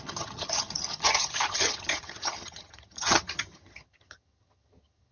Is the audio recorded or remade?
remade